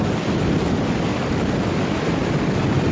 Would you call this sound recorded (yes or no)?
yes